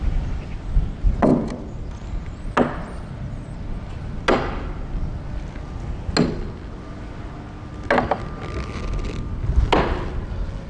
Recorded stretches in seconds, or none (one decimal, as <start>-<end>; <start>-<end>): 0.0-10.7